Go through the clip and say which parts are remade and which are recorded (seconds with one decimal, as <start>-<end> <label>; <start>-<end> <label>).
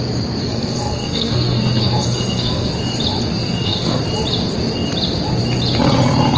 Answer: 0.0-0.4 recorded; 0.4-2.7 remade; 2.7-3.4 recorded; 3.4-4.0 remade; 4.0-6.4 recorded